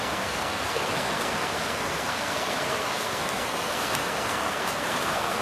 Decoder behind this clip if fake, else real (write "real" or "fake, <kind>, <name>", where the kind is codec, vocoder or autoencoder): fake, codec, SNAC